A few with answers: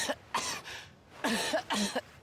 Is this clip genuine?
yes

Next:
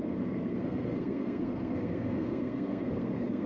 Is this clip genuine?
no